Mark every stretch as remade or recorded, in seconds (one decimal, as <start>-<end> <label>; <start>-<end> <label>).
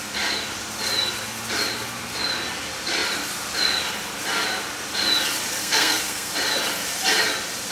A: 0.0-5.6 recorded; 5.6-6.3 remade; 6.3-7.7 recorded